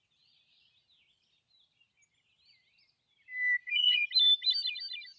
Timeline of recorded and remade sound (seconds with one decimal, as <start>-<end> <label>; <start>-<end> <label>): 0.0-3.6 recorded; 3.6-4.1 remade; 4.1-5.2 recorded